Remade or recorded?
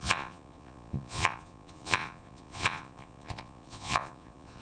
remade